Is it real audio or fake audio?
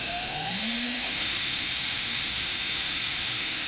fake